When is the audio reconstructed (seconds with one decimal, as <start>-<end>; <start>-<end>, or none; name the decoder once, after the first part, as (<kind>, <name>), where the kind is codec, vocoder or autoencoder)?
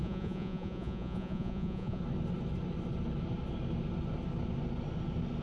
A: 0.0-2.0 (vocoder, Vocos)